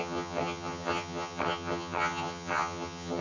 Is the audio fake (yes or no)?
yes